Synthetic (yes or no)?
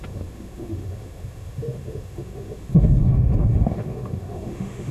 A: yes